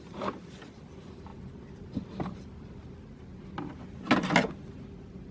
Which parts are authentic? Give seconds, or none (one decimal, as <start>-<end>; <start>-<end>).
0.0-5.3